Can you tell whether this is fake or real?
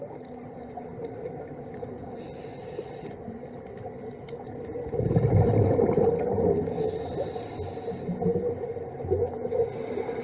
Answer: real